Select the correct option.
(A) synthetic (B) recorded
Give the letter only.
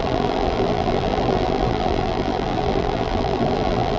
A